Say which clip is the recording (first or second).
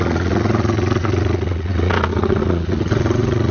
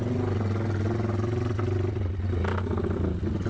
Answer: second